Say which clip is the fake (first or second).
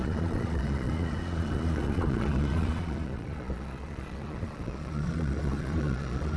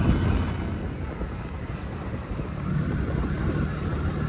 first